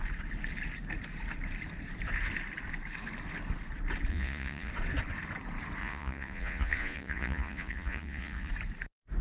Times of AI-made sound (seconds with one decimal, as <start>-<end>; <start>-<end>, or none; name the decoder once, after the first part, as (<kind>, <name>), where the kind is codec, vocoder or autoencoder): 4.1-4.7 (vocoder, Vocos); 5.8-8.5